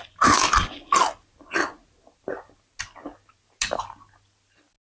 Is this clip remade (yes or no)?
no